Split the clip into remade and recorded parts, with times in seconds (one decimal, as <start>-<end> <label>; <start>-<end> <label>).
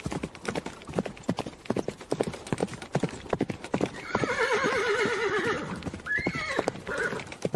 0.0-2.6 remade; 2.6-3.3 recorded; 3.3-7.6 remade